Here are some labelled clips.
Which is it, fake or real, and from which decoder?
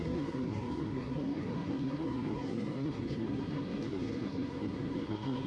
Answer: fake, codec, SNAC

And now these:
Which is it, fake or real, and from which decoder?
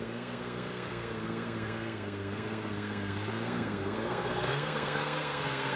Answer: fake, codec, SNAC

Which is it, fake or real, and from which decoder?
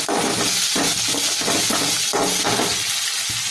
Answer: real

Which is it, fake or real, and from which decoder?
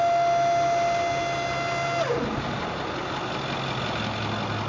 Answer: real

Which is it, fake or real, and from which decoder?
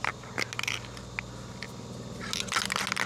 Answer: real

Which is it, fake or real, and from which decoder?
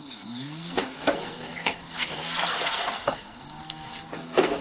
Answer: fake, codec, SNAC